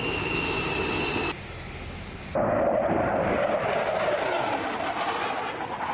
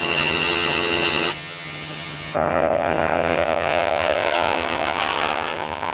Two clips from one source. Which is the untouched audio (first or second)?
first